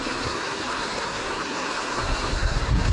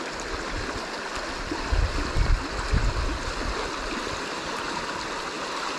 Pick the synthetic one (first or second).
first